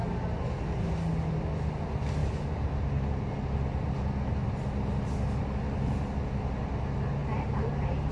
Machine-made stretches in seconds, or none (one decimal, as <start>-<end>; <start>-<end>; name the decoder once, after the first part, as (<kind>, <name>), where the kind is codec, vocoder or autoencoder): 2.2-3.4 (vocoder, BigVGAN v2); 7.2-8.1